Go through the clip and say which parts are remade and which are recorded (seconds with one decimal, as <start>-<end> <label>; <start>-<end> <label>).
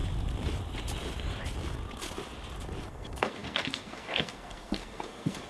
0.0-2.9 recorded; 2.9-5.5 remade